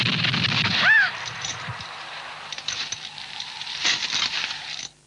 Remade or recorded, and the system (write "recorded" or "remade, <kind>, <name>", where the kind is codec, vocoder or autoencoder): remade, vocoder, BigVGAN v2